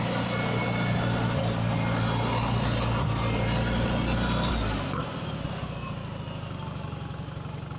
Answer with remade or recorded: recorded